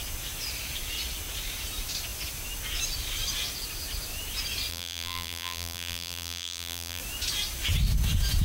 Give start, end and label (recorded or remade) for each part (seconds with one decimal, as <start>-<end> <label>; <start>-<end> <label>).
0.0-4.7 recorded; 4.7-7.0 remade; 7.0-8.4 recorded